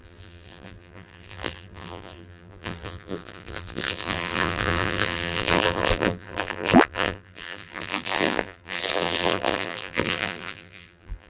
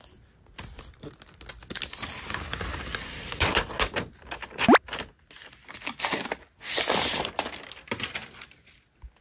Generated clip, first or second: first